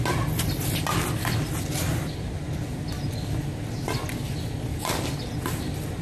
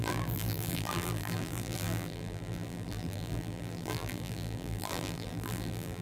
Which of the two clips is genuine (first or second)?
first